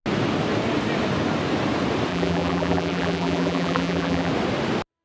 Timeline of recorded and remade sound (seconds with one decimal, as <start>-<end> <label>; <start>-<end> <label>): 0.0-2.1 recorded; 2.1-4.3 remade; 4.3-5.0 recorded